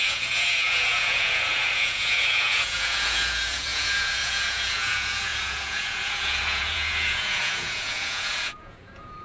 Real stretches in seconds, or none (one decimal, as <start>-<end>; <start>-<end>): none